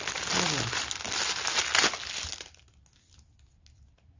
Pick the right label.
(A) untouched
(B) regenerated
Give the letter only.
A